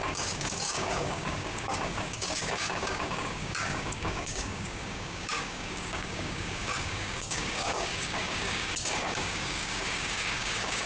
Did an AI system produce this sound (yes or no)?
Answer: yes